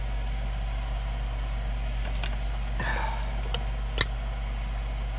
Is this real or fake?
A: real